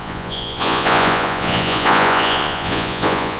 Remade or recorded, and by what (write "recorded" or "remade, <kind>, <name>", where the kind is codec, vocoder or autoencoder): remade, vocoder, Vocos